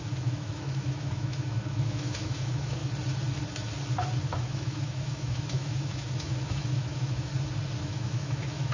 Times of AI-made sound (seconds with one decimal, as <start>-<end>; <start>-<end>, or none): 0.0-2.8; 4.2-7.3; 7.8-8.7